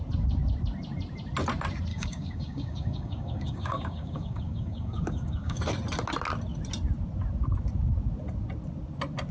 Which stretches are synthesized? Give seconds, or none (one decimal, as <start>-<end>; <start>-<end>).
1.9-5.6

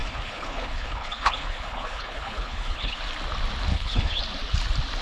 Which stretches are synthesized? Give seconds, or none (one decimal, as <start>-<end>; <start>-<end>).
0.0-3.0; 3.7-4.2